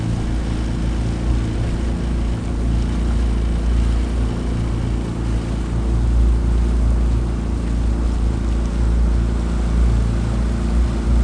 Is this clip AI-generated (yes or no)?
no